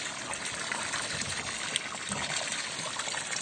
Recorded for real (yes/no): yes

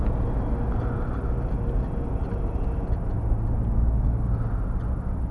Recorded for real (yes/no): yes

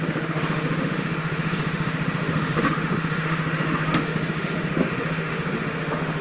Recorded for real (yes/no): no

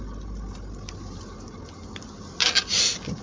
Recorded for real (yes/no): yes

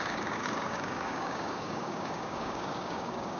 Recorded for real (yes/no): no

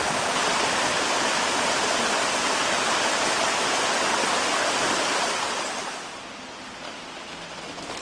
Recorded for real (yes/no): yes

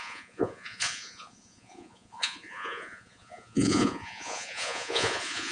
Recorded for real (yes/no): no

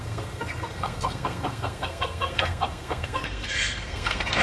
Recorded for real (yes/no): no